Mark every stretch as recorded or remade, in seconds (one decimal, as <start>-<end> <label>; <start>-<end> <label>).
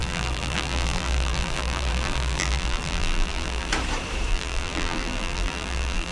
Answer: 0.0-3.7 remade; 3.7-4.3 recorded; 4.3-6.1 remade